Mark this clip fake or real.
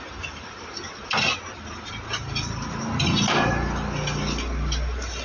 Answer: real